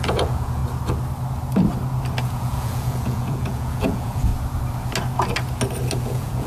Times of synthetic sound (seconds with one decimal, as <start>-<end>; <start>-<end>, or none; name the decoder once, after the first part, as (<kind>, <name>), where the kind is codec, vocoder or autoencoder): 0.0-0.6 (vocoder, Vocos); 2.2-4.3; 6.0-6.5